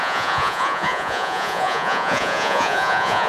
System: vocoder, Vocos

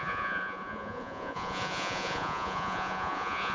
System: vocoder, Vocos